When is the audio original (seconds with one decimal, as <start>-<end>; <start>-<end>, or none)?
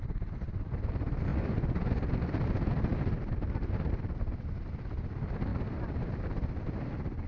0.0-1.3; 1.9-2.9; 4.3-5.5; 6.1-7.3